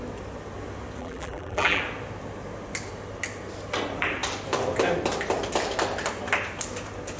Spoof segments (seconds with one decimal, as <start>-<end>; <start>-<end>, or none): 1.0-1.8